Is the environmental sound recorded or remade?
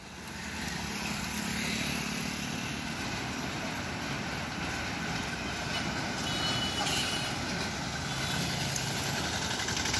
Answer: recorded